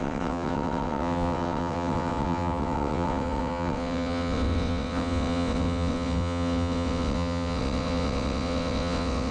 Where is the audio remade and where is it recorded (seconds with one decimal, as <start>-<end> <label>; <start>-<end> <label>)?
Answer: 0.0-9.3 remade